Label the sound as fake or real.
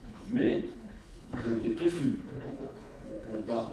fake